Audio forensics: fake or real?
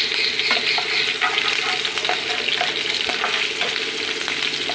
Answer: real